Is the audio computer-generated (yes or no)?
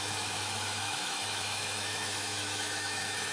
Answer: yes